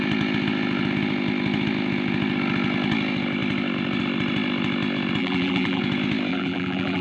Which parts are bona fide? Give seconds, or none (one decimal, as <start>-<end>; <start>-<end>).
0.0-5.2; 5.8-6.3